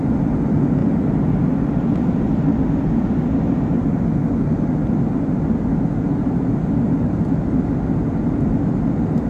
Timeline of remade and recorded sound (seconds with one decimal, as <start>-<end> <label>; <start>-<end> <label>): 0.0-9.3 recorded